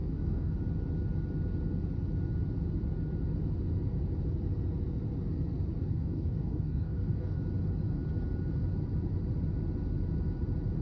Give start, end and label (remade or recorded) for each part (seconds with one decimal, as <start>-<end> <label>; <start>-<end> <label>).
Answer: 0.0-0.6 remade; 0.6-5.9 recorded; 5.9-7.4 remade; 7.4-10.8 recorded